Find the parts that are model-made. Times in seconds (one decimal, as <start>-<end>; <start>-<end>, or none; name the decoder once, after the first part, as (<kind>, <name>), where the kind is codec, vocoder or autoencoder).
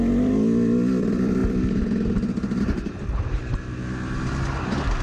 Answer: none